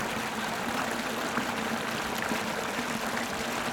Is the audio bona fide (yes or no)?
yes